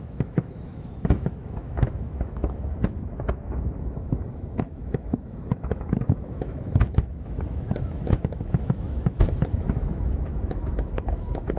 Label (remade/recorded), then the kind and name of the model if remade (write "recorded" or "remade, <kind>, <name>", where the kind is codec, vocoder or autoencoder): remade, autoencoder, DAC-VAE